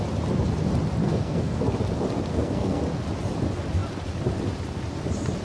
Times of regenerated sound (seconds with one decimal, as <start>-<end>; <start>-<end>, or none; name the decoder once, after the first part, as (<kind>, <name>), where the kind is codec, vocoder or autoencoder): 1.0-1.6 (codec, SNAC); 2.3-2.8